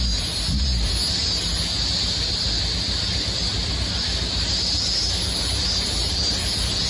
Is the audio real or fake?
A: real